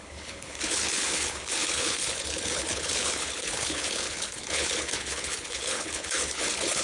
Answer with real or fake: fake